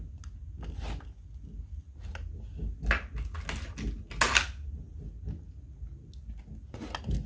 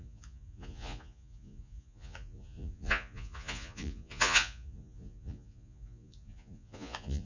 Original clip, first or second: first